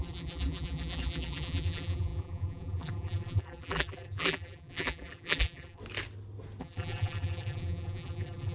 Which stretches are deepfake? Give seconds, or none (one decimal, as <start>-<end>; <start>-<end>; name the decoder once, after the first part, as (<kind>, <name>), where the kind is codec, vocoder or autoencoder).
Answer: 0.0-5.8 (vocoder, BigVGAN v2); 6.6-8.5